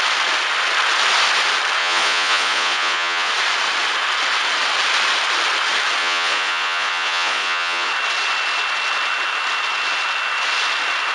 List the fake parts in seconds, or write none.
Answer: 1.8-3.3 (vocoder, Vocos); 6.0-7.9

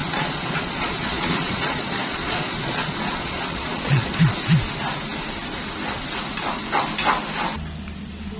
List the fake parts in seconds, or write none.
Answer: 0.0-4.2 (vocoder, Vocos)

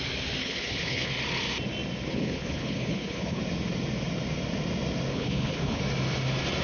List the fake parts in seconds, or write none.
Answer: 0.4-1.1 (codec, HILCodec); 2.1-3.4; 5.1-5.8